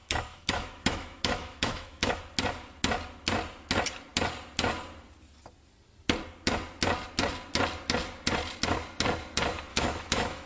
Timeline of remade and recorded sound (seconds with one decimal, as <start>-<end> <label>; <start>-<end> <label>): 0.0-2.2 remade; 2.2-9.7 recorded; 9.7-10.5 remade